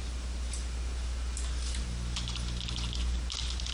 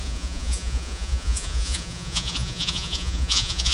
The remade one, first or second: second